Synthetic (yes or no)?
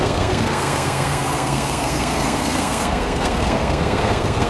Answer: yes